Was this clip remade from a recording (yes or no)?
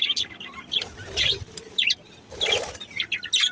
no